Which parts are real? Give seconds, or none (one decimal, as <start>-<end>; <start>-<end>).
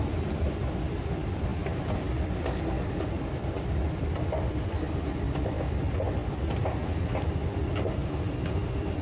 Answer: none